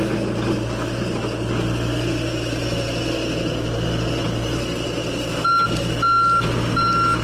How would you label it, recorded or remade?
recorded